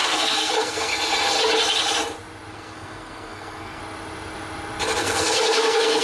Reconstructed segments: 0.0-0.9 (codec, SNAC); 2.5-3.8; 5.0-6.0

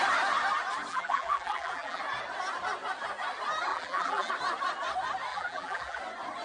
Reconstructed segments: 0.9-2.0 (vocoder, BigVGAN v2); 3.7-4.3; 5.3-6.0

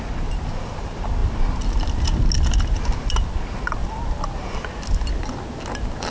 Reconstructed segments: none